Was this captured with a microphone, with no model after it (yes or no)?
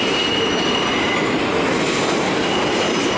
yes